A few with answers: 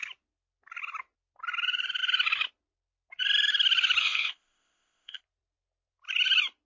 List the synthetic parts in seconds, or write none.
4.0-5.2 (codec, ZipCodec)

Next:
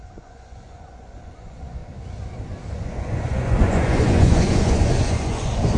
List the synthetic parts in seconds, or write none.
0.0-1.8 (vocoder, Vocos); 2.7-5.8

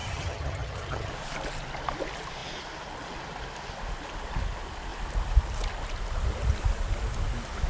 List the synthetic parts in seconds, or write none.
0.0-1.1 (vocoder, HiFi-GAN)

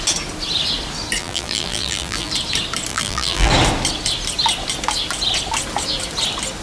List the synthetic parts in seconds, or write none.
1.2-2.3 (vocoder, BigVGAN v2); 2.9-3.5

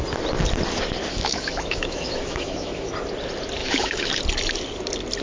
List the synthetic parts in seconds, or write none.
1.1-2.9 (autoencoder, DAC-VAE); 3.6-4.2

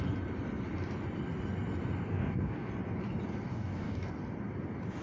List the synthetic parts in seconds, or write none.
2.1-2.7 (codec, DAC); 3.5-4.1

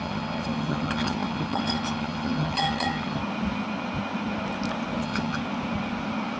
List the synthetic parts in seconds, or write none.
0.0-3.2 (vocoder, HiFi-GAN); 5.0-5.4

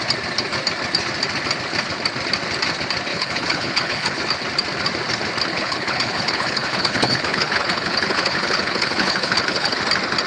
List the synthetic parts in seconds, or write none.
3.1-4.2 (codec, HILCodec); 5.5-9.8